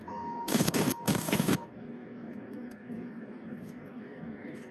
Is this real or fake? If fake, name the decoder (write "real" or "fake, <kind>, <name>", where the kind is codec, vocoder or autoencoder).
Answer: fake, codec, DAC